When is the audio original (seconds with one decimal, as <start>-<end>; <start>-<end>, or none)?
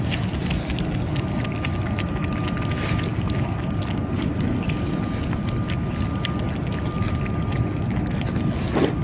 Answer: 0.0-9.0